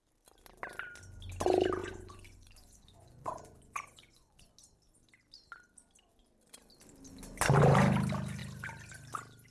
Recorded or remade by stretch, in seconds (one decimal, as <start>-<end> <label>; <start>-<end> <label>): 0.0-1.8 recorded; 1.8-4.5 remade; 4.5-9.5 recorded